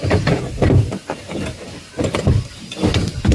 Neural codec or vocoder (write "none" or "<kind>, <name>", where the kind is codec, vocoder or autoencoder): none